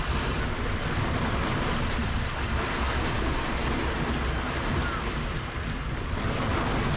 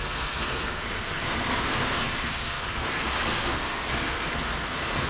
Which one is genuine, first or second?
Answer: first